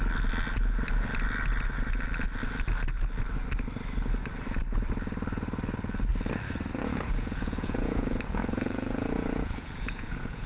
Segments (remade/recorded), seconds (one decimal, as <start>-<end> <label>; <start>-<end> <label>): 0.0-6.7 recorded; 6.7-10.5 remade